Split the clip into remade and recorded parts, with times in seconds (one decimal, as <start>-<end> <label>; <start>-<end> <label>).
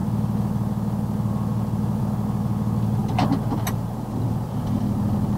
0.0-5.4 recorded